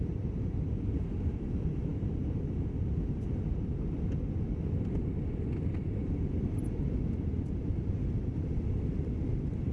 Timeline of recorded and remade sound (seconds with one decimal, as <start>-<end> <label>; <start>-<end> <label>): 0.0-9.7 recorded